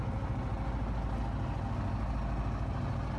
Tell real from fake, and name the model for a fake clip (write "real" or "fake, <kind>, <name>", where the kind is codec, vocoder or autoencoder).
real